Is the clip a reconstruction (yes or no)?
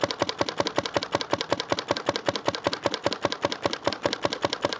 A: no